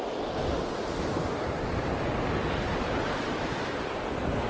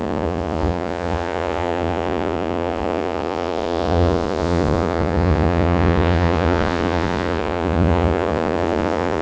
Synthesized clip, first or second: second